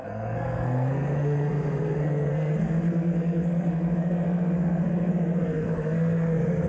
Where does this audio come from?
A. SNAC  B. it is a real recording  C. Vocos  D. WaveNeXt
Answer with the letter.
A